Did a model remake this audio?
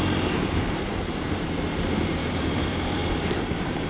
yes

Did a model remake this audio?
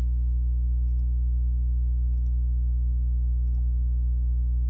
no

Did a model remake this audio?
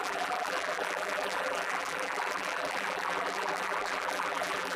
yes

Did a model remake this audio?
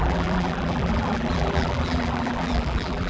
yes